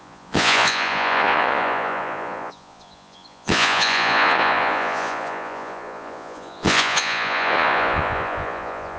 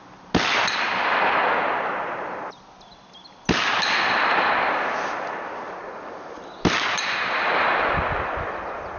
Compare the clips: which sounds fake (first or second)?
first